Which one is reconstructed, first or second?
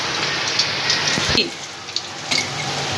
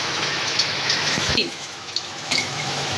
second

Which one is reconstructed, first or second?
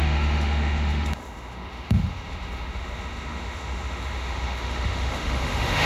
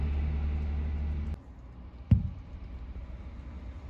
first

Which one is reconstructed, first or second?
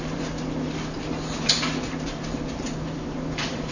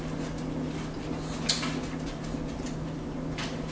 first